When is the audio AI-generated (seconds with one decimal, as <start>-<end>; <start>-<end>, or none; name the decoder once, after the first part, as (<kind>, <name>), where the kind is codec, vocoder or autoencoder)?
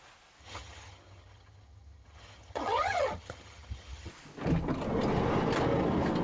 0.4-4.1 (vocoder, HiFi-GAN)